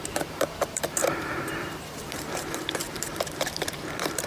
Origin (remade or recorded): remade